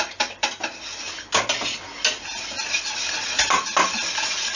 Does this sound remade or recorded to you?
recorded